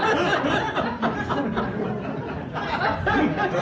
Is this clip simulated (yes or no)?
yes